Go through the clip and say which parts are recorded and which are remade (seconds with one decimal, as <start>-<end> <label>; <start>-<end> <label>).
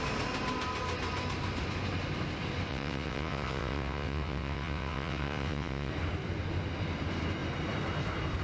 0.0-2.7 recorded; 2.7-5.9 remade; 5.9-8.4 recorded